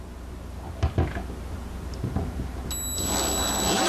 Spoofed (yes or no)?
no